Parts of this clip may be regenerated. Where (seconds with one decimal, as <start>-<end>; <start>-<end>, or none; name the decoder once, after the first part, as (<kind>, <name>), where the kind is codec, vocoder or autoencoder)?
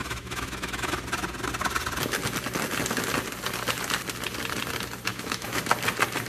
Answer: 0.0-0.9 (autoencoder, DAC-VAE); 5.1-5.6